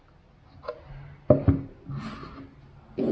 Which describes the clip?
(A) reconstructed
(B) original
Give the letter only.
B